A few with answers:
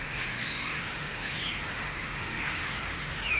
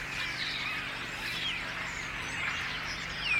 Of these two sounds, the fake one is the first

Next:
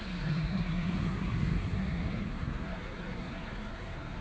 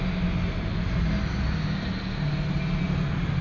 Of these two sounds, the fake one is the first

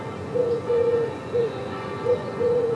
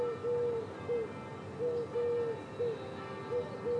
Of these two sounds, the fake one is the first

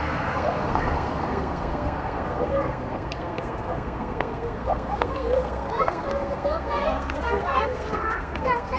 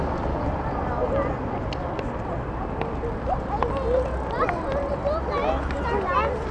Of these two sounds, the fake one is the first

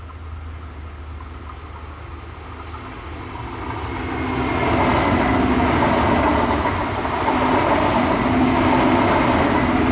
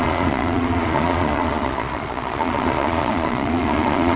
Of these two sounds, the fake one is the second